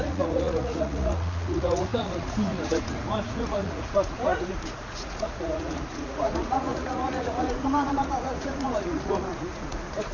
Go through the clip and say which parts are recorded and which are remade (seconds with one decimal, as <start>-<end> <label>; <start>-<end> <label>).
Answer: 0.0-10.1 remade